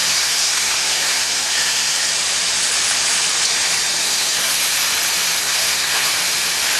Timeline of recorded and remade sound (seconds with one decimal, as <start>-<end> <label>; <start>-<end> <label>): 0.0-2.1 remade; 2.1-4.0 recorded; 4.0-4.6 remade; 4.6-5.4 recorded; 5.4-6.1 remade; 6.1-6.8 recorded